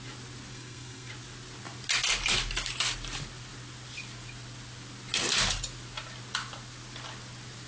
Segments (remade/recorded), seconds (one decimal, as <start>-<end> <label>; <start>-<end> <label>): 0.0-0.5 recorded; 0.5-1.1 remade; 1.1-7.7 recorded